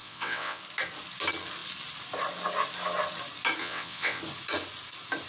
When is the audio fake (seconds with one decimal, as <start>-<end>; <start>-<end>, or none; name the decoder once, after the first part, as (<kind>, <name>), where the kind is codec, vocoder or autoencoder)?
0.0-0.6 (vocoder, WaveNeXt); 3.6-4.2